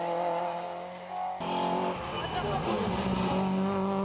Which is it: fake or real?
real